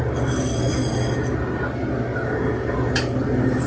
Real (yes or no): yes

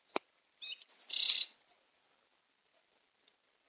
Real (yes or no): yes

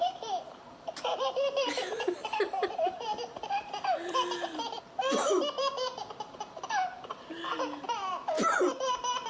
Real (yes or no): no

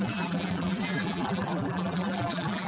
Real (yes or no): no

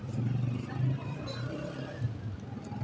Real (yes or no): yes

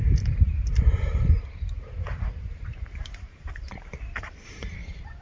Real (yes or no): no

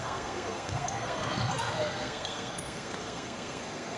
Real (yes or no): no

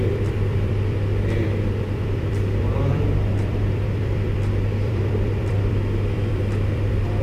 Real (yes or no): no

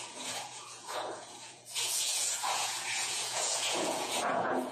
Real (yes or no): no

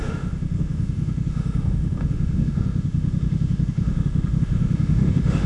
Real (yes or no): no